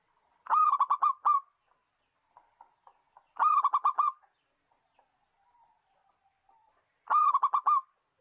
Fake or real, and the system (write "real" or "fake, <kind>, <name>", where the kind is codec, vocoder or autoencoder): real